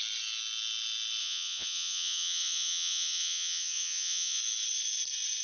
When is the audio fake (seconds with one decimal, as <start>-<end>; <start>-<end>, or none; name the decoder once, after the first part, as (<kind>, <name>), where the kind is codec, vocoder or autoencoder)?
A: 1.2-4.4 (vocoder, Vocos)

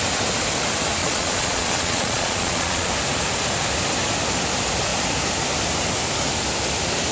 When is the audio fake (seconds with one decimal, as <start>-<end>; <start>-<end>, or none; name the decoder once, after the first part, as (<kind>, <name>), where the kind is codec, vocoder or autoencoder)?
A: 1.0-2.9 (vocoder, Vocos)

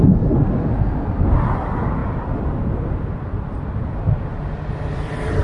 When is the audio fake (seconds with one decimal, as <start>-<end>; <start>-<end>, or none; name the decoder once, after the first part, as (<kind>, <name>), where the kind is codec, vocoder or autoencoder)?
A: none

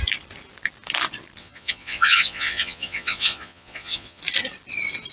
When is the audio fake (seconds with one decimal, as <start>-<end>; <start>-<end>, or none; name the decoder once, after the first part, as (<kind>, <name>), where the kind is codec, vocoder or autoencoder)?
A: 1.4-4.2 (vocoder, Vocos)

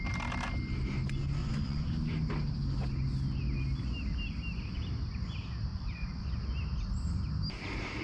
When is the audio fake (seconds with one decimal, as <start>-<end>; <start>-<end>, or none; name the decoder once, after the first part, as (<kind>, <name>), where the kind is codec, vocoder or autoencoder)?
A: 1.4-1.9 (vocoder, Vocos); 5.7-6.3

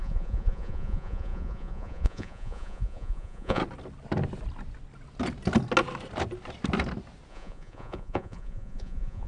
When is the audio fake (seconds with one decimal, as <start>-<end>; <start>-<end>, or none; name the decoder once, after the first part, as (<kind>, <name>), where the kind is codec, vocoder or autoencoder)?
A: 0.0-3.6 (vocoder, Vocos); 7.3-9.3

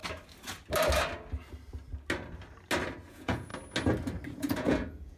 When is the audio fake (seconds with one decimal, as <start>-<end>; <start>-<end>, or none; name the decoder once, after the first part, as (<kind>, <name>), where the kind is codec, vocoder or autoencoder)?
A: 3.1-3.5 (vocoder, Vocos); 4.3-5.2